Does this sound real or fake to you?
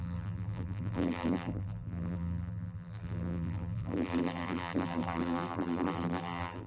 fake